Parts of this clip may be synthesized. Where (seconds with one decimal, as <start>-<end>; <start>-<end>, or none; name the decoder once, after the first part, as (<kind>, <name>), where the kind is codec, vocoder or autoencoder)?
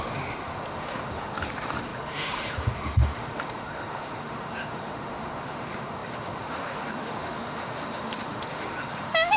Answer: 0.0-9.4 (autoencoder, DAC-VAE)